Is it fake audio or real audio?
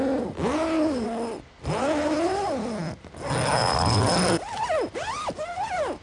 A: real